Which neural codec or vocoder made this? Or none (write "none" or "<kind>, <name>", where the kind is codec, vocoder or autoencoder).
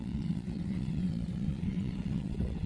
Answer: vocoder, WaveNeXt